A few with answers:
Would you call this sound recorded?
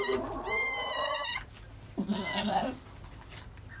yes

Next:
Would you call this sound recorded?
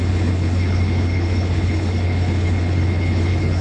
no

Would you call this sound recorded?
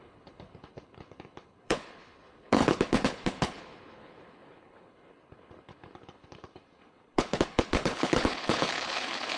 no